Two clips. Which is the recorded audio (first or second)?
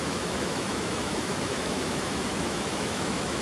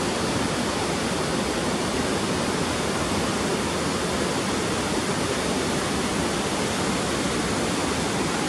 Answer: second